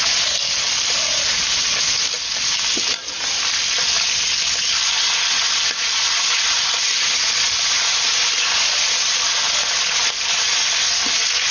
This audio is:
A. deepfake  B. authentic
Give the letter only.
B